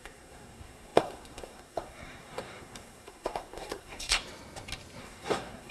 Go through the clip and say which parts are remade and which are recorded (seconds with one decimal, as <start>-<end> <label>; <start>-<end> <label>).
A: 0.0-4.2 remade; 4.2-5.0 recorded; 5.0-5.7 remade